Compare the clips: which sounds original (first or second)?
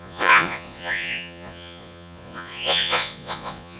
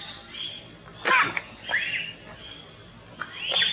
second